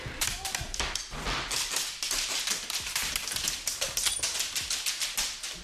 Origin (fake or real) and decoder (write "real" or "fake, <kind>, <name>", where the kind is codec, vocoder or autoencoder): real